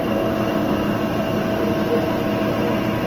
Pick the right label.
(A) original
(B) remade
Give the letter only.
A